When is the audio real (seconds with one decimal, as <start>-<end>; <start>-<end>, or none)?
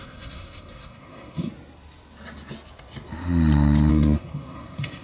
1.5-3.9